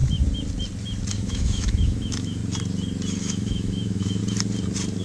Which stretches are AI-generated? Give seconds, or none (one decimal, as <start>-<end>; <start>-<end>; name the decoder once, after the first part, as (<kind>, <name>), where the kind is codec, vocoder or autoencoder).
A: 1.1-2.4 (autoencoder, DAC-VAE); 3.2-4.2